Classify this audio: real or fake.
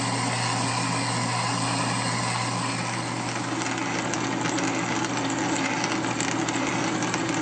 real